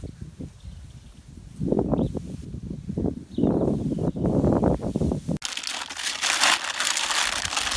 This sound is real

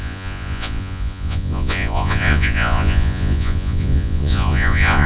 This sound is fake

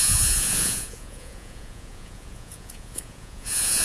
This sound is fake